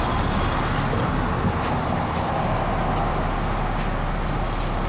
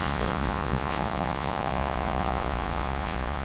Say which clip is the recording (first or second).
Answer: first